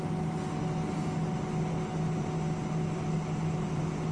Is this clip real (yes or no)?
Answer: yes